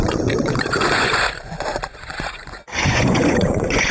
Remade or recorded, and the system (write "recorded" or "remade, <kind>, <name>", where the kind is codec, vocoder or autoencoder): remade, vocoder, Vocos